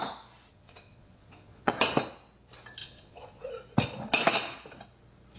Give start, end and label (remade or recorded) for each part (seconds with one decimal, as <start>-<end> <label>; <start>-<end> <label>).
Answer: 0.0-0.5 recorded; 0.5-1.7 remade; 1.7-2.8 recorded; 2.8-3.5 remade; 3.5-5.4 recorded